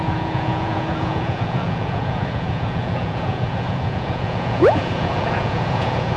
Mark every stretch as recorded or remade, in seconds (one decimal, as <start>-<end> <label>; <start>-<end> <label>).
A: 0.0-6.2 remade